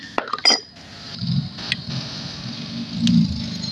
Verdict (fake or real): real